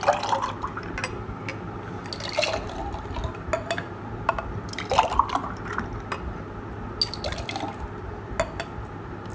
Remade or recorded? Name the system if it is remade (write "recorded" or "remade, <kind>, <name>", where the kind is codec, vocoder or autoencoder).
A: recorded